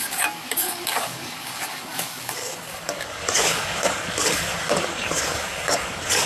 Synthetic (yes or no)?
yes